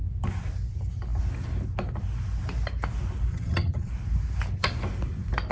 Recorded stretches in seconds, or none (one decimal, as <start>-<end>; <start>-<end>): 0.0-3.3; 3.9-5.5